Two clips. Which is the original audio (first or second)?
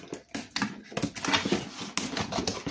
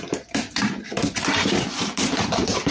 first